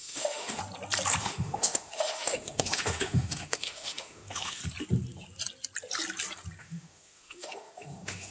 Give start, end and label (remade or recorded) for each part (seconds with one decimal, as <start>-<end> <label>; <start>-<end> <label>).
0.0-0.6 remade; 0.6-1.2 recorded; 1.2-4.6 remade; 4.6-6.6 recorded; 6.6-8.3 remade